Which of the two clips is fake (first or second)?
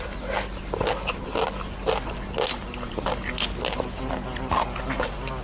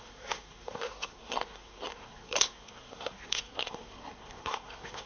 second